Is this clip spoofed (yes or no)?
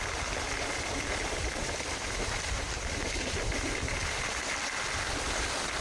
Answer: yes